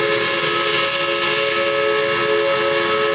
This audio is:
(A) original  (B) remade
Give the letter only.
A